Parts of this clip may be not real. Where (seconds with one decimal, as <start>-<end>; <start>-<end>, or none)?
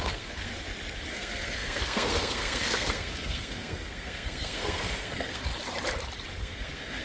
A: 0.0-0.5; 1.1-5.5; 6.4-7.0